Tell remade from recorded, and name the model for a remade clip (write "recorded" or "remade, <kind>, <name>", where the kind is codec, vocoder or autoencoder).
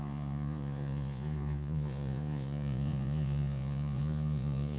remade, vocoder, Vocos